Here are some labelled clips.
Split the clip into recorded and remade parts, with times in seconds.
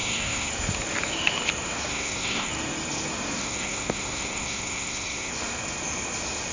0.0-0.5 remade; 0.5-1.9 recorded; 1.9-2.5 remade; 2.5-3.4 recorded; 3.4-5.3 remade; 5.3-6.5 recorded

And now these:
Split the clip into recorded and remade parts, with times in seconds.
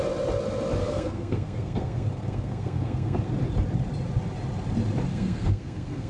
0.0-0.8 recorded; 0.8-3.3 remade; 3.3-5.1 recorded; 5.1-6.1 remade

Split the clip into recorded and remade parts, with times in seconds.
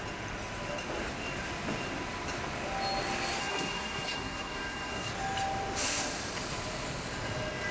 0.0-3.4 recorded; 3.4-5.1 remade; 5.1-7.7 recorded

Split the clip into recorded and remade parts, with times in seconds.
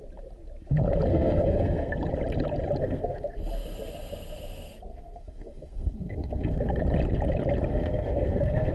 0.0-1.1 recorded; 1.1-1.9 remade; 1.9-2.8 recorded; 2.8-3.4 remade; 3.4-4.9 recorded; 4.9-6.8 remade; 6.8-7.7 recorded; 7.7-8.7 remade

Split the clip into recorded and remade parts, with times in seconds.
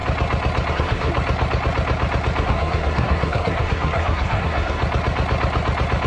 0.0-0.7 recorded; 0.7-1.1 remade; 1.1-2.4 recorded; 2.4-4.8 remade; 4.8-6.1 recorded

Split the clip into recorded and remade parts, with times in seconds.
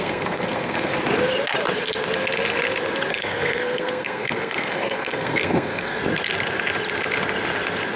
0.0-0.9 remade; 0.9-3.1 recorded; 3.1-6.0 remade; 6.0-8.0 recorded